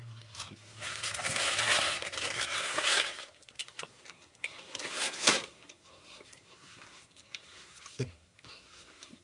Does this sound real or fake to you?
fake